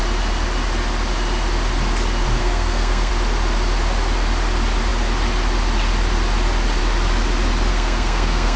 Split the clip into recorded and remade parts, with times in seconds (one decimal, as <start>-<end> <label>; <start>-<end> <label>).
0.0-2.4 recorded; 2.4-3.1 remade; 3.1-7.7 recorded; 7.7-8.6 remade